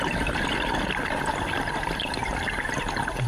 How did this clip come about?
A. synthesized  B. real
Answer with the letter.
B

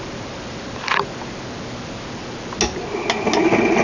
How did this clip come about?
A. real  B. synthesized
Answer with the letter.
A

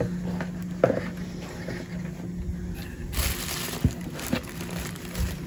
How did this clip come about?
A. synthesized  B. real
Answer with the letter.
B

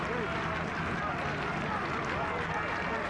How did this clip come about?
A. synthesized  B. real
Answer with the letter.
B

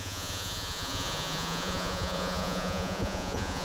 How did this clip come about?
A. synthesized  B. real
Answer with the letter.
A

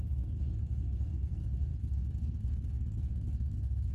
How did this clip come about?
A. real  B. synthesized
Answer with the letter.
B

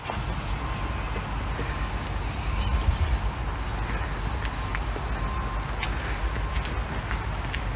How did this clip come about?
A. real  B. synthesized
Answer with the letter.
A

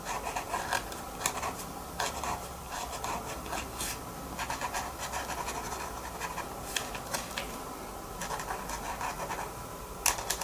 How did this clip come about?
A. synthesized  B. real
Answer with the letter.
B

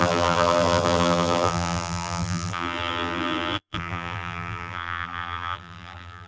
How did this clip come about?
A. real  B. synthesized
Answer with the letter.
B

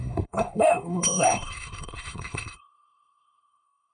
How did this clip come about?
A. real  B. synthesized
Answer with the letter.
B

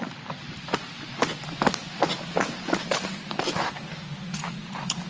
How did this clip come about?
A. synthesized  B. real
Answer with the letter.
B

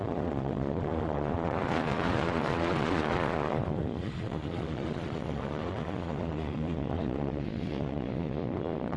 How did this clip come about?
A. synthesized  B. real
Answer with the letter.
A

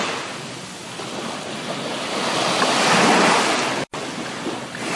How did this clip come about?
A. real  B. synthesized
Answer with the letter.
A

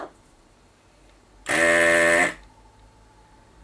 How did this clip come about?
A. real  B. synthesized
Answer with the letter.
A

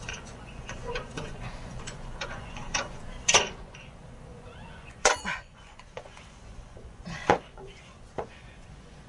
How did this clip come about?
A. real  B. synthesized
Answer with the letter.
B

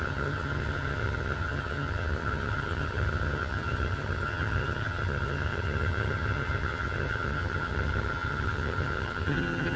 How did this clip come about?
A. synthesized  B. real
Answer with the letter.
A